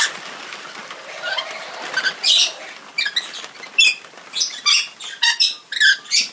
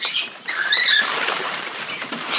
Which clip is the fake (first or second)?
second